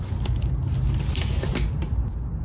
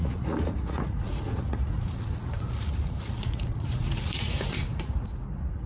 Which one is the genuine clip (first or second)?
first